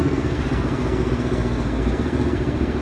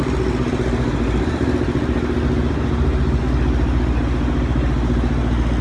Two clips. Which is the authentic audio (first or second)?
second